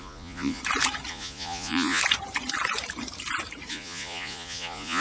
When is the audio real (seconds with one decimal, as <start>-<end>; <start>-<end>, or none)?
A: 0.6-1.1; 2.0-3.7